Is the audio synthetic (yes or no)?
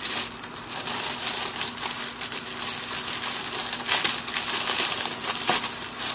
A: no